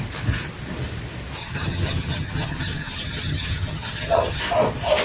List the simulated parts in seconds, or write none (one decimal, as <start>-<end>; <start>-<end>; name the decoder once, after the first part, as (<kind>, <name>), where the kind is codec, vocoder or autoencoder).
1.4-4.4 (vocoder, HiFi-GAN)